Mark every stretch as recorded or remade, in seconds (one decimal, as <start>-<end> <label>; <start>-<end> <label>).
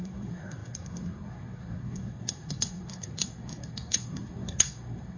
0.0-5.2 remade